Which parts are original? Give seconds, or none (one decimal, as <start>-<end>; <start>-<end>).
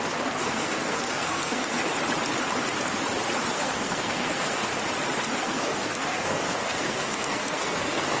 1.8-3.5; 4.7-5.4